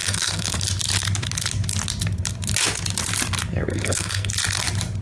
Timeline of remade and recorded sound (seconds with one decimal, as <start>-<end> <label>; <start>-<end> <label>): 0.0-0.6 remade; 0.6-3.7 recorded; 3.7-4.3 remade; 4.3-5.0 recorded